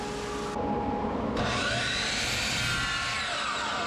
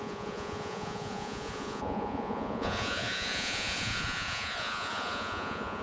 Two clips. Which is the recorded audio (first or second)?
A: first